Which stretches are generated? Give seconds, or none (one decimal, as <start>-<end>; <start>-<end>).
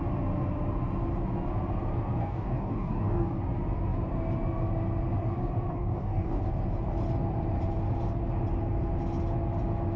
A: 2.2-3.4; 5.7-6.4